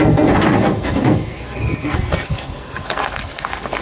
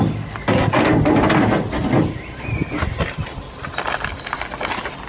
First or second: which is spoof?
first